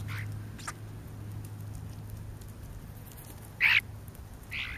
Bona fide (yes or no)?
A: yes